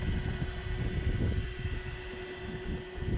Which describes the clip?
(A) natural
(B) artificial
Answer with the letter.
A